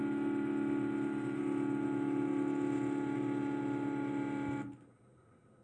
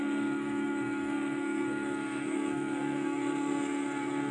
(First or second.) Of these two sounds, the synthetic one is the second